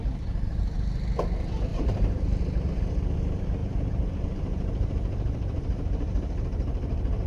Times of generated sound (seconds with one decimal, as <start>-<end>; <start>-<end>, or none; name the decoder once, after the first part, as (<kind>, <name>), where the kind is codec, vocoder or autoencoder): 1.7-2.8 (vocoder, BigVGAN v2); 3.6-7.3